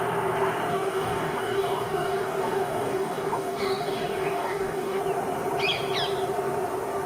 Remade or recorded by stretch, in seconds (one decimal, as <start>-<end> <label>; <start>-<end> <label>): 0.0-0.7 recorded; 0.7-5.0 remade; 5.0-7.1 recorded